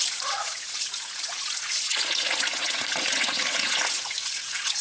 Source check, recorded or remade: remade